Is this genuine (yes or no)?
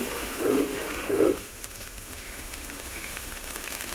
no